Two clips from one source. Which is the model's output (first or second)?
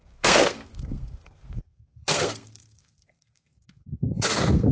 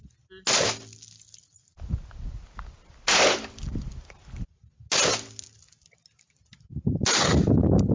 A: first